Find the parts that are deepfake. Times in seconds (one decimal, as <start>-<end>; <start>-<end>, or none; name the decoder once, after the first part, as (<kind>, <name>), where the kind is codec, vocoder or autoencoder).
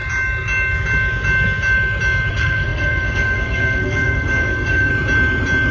2.3-4.9 (codec, SNAC)